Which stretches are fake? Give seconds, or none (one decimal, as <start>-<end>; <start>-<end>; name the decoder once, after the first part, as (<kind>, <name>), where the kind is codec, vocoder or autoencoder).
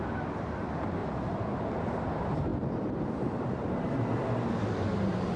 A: 1.0-1.6 (vocoder, BigVGAN v2)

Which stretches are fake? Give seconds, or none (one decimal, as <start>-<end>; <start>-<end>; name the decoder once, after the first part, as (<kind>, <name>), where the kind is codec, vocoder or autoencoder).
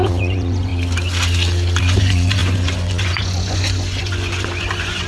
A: 0.0-0.7 (vocoder, Vocos); 1.8-5.1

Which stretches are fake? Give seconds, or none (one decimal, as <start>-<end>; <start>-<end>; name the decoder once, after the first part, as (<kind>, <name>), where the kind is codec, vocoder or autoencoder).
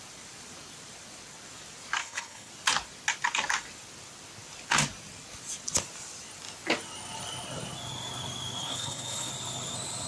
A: 2.0-2.5 (codec, HILCodec); 8.6-9.3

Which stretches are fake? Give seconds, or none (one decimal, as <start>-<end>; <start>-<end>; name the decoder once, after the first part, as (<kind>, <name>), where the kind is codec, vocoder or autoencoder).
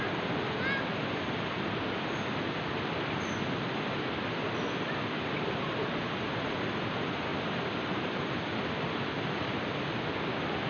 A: 7.3-8.2 (vocoder, BigVGAN v2)